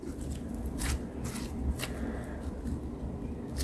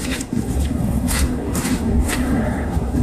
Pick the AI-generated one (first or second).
second